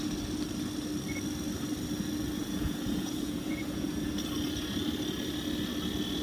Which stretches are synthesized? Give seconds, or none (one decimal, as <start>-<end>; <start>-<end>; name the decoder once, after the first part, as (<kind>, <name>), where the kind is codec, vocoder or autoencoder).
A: 2.4-4.1 (vocoder, Vocos)

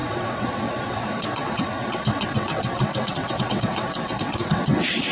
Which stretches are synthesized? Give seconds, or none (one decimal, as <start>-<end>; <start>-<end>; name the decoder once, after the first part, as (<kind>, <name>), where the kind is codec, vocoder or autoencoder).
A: 0.0-5.1 (vocoder, WaveNeXt)

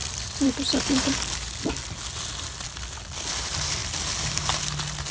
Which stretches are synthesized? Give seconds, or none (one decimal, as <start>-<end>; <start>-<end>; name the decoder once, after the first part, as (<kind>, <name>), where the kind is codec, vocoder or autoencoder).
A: 0.0-1.7 (vocoder, BigVGAN v2)

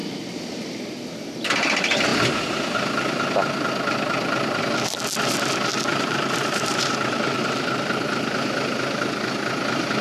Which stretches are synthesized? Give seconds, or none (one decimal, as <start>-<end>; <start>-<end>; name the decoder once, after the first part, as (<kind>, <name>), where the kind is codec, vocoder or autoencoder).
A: 5.7-7.4 (vocoder, BigVGAN v2)

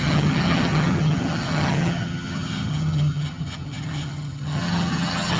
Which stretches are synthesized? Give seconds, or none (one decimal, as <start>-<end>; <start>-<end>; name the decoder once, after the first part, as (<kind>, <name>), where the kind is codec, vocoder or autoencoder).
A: 0.0-5.4 (vocoder, HiFi-GAN)

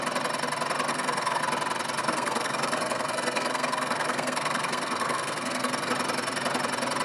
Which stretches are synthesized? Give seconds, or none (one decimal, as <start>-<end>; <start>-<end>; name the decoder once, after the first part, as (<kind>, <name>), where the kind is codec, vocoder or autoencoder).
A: 0.9-1.4 (codec, SNAC); 2.0-5.9

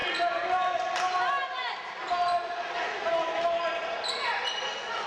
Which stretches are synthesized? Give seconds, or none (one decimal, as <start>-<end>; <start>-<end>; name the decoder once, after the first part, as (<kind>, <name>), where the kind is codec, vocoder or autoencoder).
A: none